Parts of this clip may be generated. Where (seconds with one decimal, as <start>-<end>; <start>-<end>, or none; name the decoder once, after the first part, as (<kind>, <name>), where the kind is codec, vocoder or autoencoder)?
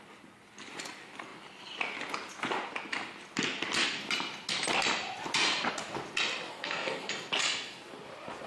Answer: 6.5-7.1 (codec, SNAC)